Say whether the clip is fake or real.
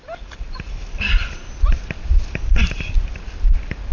real